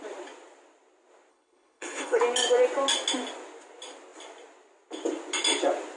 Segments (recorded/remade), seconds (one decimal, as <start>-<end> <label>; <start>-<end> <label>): 0.0-1.3 recorded; 1.3-2.2 remade; 2.2-6.0 recorded